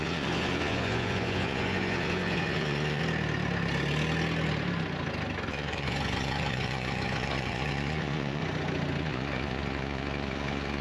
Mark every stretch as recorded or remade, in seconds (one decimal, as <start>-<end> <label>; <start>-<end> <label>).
0.0-3.0 remade; 3.0-5.5 recorded; 5.5-8.4 remade; 8.4-9.0 recorded; 9.0-10.8 remade